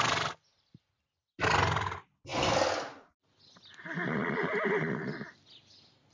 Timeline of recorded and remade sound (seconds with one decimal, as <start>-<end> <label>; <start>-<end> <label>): 0.0-6.1 recorded

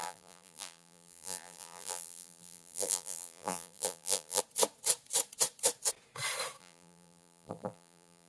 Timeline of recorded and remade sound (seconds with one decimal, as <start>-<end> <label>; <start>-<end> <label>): 0.0-4.4 remade; 4.4-6.6 recorded; 6.6-8.3 remade

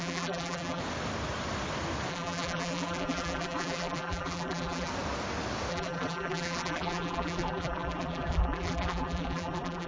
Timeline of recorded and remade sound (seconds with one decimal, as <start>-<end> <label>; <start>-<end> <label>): 0.0-0.8 remade; 0.8-2.1 recorded; 2.1-4.9 remade; 4.9-5.7 recorded; 5.7-9.9 remade

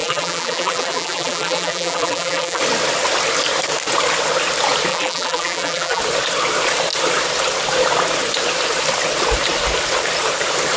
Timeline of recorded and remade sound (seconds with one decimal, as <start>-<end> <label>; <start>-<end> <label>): 0.0-2.6 remade; 2.6-4.9 recorded; 4.9-6.0 remade; 6.0-10.8 recorded

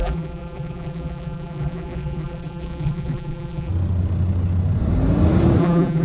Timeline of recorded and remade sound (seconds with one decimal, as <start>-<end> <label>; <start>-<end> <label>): 0.0-3.7 remade; 3.7-5.6 recorded; 5.6-6.0 remade

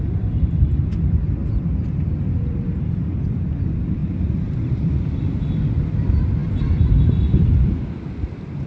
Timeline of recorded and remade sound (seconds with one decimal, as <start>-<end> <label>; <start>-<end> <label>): 0.0-4.0 remade; 4.0-4.5 recorded; 4.5-8.7 remade

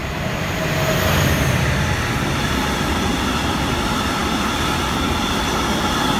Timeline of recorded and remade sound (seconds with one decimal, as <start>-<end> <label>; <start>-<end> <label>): 0.0-6.2 recorded

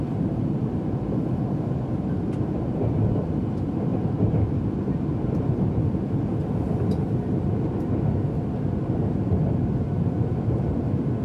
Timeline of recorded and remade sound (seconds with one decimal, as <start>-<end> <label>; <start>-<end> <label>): 0.0-3.9 remade; 3.9-4.7 recorded; 4.7-6.4 remade; 6.4-8.6 recorded; 8.6-11.2 remade